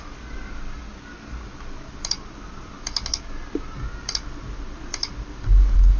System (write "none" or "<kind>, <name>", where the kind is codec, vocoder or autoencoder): none